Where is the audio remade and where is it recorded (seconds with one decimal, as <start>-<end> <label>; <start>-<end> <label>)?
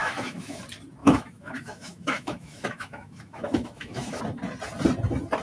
0.0-0.6 remade; 0.6-1.0 recorded; 1.0-4.2 remade; 4.2-5.4 recorded